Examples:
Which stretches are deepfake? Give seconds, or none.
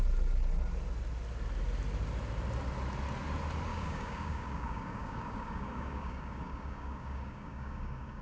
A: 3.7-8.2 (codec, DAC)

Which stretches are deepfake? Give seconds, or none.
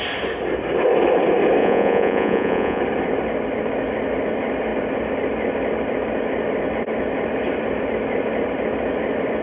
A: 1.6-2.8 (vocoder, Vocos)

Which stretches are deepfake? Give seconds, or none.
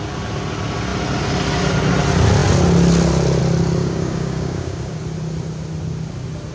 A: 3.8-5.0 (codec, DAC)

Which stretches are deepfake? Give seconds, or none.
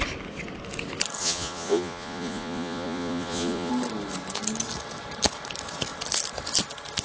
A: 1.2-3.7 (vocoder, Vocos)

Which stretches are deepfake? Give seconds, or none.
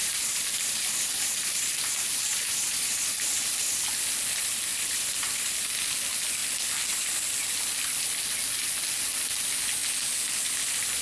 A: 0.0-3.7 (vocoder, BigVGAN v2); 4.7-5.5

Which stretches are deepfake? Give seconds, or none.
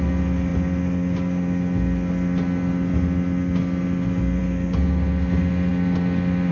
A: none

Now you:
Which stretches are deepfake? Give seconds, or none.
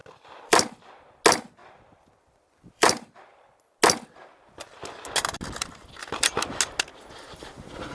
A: 0.0-0.9 (vocoder, BigVGAN v2); 1.6-3.2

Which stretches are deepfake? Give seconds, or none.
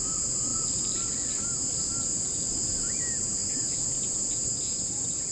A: none